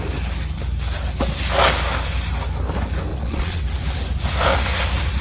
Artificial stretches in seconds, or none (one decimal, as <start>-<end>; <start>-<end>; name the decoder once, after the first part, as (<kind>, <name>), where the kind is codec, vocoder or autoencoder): 3.1-3.6 (vocoder, Vocos)